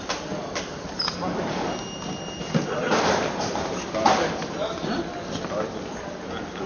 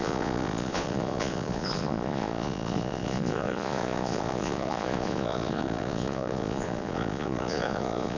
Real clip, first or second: first